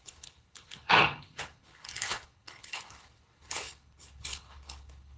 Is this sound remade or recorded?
remade